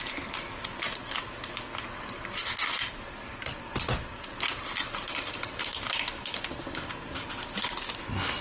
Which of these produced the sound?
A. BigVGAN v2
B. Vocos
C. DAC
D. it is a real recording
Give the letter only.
D